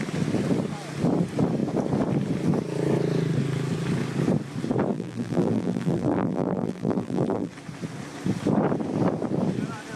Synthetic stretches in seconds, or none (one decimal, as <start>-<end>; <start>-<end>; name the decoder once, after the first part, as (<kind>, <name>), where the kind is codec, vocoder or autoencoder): 4.9-7.5 (vocoder, BigVGAN v2)